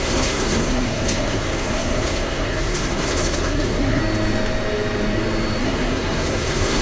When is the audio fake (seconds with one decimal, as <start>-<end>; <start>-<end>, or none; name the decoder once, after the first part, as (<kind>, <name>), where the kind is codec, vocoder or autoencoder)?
0.0-4.0 (codec, SNAC); 5.6-6.8